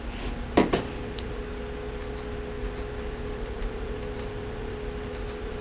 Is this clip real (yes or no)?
yes